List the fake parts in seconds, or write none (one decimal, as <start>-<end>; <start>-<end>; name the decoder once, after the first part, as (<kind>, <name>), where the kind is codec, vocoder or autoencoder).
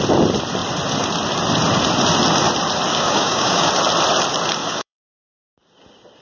2.9-3.7 (codec, DAC); 4.6-5.3